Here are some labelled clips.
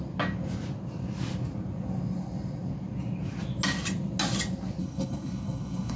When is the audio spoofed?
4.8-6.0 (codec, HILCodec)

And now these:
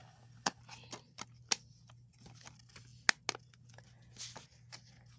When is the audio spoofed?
0.0-0.6 (codec, HILCodec)

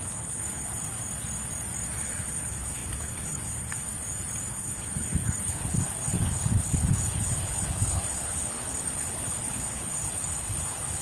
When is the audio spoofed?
0.0-0.8 (codec, HILCodec); 2.0-3.9; 4.5-11.0